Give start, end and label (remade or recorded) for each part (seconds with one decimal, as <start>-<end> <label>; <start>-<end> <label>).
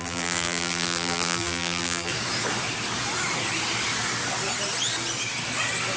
0.0-2.1 remade; 2.1-6.0 recorded